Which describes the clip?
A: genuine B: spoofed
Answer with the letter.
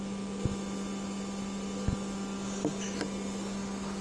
A